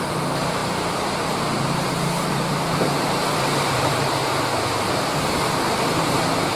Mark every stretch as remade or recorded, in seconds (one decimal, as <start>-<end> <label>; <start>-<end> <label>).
0.0-4.2 remade; 4.2-6.6 recorded